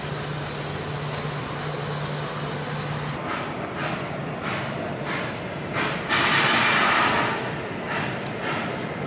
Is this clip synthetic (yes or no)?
no